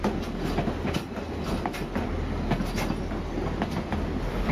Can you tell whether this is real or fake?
real